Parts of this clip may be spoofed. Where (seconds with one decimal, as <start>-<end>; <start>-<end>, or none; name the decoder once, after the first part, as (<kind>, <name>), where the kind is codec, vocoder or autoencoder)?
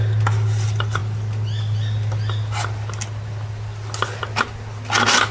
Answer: none